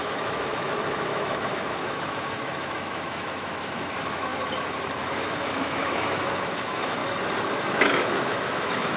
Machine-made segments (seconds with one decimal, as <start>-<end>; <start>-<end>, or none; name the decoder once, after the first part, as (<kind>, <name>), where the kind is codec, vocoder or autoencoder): 0.0-4.3 (autoencoder, DAC-VAE); 5.4-7.0; 7.5-9.0